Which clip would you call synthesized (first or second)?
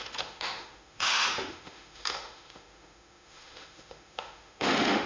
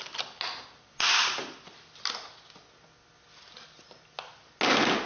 first